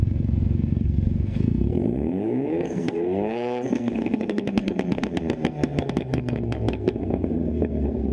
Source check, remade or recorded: remade